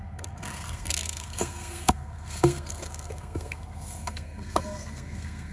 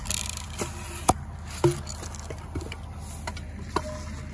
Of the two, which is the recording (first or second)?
second